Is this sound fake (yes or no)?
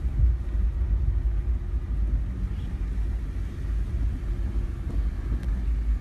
no